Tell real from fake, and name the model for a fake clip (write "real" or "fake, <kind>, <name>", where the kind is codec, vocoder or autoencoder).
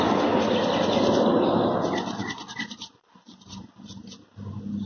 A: real